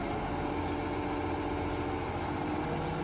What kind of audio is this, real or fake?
real